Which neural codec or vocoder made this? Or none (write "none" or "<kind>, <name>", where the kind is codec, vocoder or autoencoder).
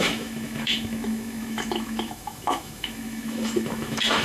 autoencoder, DAC-VAE